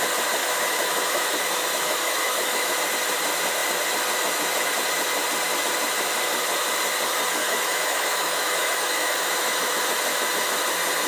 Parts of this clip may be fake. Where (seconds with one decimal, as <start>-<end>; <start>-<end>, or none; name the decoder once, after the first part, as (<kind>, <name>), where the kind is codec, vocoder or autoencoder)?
0.4-2.7 (autoencoder, DAC-VAE); 7.4-9.8